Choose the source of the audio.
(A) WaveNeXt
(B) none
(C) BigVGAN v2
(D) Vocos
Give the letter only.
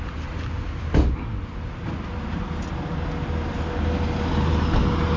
B